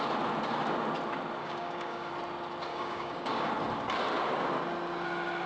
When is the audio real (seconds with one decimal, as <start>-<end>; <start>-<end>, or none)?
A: 0.0-1.4; 2.1-2.7; 3.5-5.5